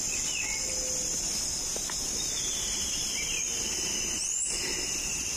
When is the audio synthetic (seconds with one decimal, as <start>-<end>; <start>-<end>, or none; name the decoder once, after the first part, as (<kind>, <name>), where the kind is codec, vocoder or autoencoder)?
none